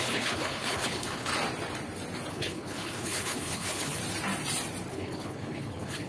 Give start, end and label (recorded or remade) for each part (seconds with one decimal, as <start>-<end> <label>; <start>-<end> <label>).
0.0-1.3 remade; 1.3-2.3 recorded; 2.3-4.0 remade; 4.0-4.9 recorded; 4.9-6.1 remade